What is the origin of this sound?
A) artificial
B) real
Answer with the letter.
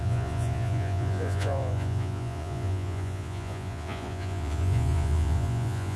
A